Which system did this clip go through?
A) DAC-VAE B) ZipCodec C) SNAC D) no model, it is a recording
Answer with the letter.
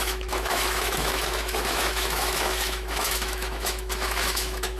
A